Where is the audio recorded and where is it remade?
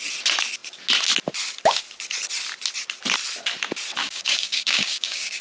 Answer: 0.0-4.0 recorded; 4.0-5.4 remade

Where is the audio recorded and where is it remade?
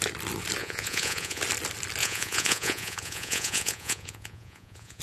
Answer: 0.0-0.6 recorded; 0.6-1.4 remade; 1.4-2.0 recorded; 2.0-5.0 remade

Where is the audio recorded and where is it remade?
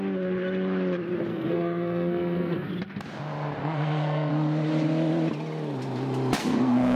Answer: 0.0-1.3 recorded; 1.3-2.7 remade; 2.7-3.6 recorded; 3.6-4.3 remade; 4.3-6.4 recorded; 6.4-7.0 remade